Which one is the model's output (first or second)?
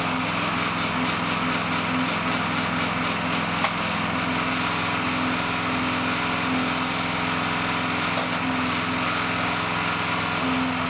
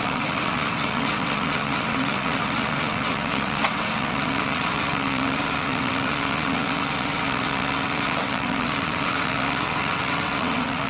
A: second